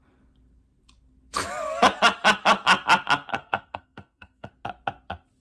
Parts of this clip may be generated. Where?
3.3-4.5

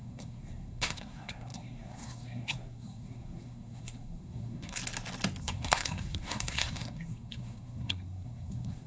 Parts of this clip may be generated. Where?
0.0-4.8; 5.4-8.9

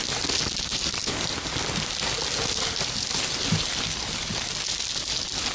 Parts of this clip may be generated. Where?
none